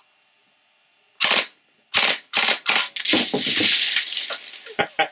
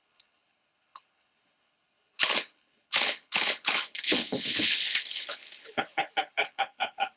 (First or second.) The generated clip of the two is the second